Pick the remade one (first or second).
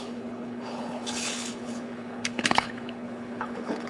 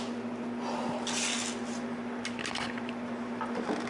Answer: first